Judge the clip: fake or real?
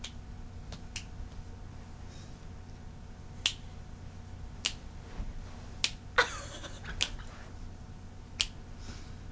real